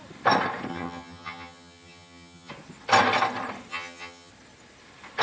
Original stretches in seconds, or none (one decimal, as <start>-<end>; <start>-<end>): 0.0-0.7; 2.5-3.7; 4.3-5.2